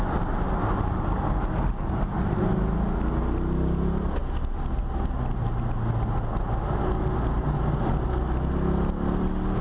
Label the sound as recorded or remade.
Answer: recorded